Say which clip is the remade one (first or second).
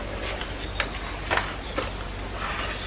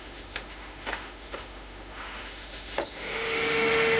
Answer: second